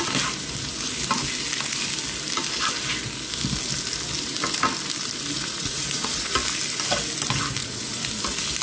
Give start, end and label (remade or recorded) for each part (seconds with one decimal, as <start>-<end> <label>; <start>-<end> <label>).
0.0-5.4 recorded; 5.4-6.3 remade; 6.3-7.6 recorded; 7.6-8.1 remade; 8.1-8.6 recorded